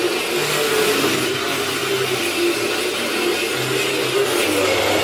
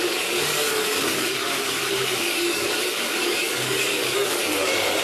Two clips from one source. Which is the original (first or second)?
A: first